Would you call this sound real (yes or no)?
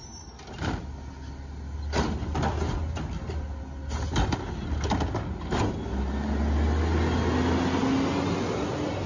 yes